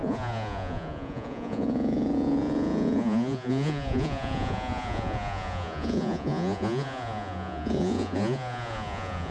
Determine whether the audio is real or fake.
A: fake